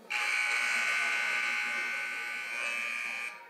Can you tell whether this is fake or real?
real